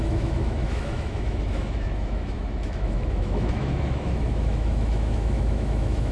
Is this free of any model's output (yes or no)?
no